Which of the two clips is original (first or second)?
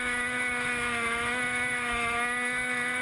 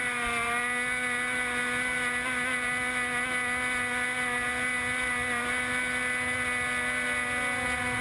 second